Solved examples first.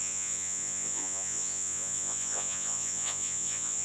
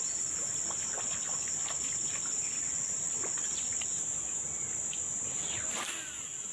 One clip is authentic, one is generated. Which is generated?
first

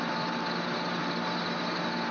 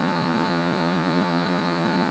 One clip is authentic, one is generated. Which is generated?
second